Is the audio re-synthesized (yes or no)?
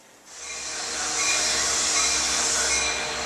no